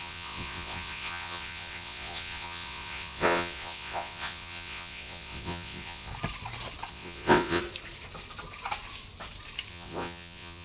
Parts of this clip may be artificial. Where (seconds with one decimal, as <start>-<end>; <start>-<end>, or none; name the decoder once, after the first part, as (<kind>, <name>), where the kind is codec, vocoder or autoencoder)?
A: 0.0-6.1 (vocoder, WaveNeXt); 6.9-7.6; 9.7-10.6